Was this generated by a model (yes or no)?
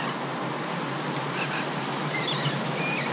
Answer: no